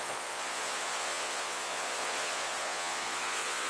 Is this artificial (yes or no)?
yes